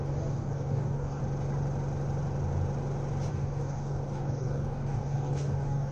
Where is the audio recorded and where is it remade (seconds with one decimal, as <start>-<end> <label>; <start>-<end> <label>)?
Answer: 0.0-1.2 remade; 1.2-3.3 recorded; 3.3-5.9 remade